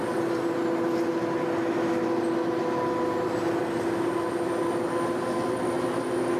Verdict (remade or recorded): recorded